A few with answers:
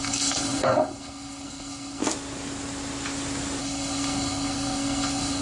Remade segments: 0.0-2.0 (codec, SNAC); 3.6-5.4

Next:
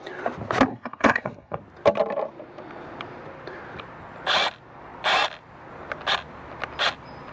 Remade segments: 0.7-1.6 (codec, SNAC)

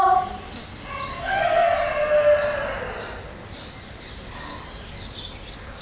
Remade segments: 1.1-1.7 (codec, SNAC)

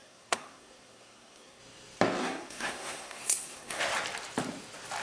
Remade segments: 0.0-1.6 (codec, SNAC); 2.2-3.8

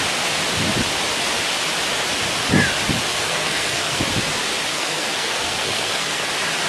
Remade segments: 3.1-4.0 (codec, SNAC); 4.7-6.3